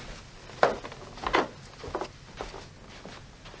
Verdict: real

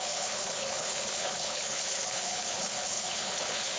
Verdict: fake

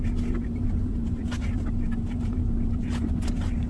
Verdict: fake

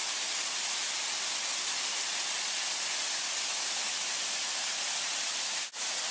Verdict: real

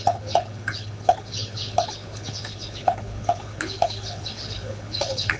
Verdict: fake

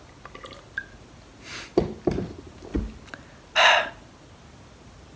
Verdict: real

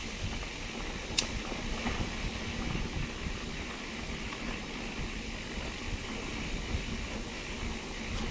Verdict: real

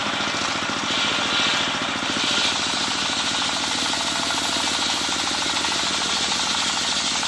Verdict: real